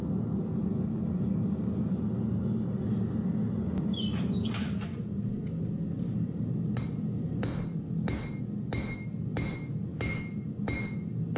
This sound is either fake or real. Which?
real